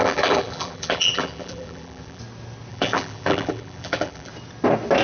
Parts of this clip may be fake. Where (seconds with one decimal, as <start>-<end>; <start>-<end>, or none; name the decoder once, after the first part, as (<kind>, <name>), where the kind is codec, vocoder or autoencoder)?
0.0-2.2 (vocoder, BigVGAN v2); 2.7-4.3

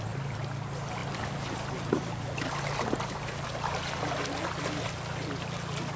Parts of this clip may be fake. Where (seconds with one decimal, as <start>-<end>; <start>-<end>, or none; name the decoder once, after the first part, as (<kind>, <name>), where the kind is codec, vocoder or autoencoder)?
none